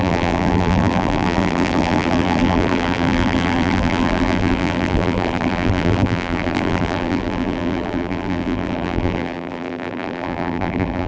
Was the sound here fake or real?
fake